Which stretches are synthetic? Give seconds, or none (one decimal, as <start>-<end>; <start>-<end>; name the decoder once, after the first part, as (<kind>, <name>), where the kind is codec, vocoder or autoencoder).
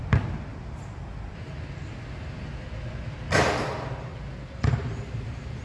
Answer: 0.0-0.5 (vocoder, BigVGAN v2); 3.4-4.1; 5.0-5.6